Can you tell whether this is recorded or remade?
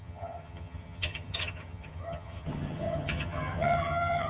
remade